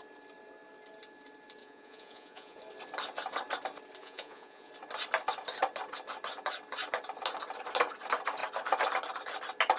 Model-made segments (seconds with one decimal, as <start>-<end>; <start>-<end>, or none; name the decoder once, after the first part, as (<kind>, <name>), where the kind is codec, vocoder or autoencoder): 1.6-2.6 (vocoder, Vocos); 4.0-4.7